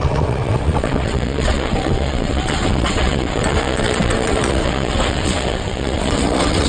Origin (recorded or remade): remade